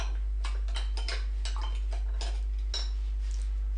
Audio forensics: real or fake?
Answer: real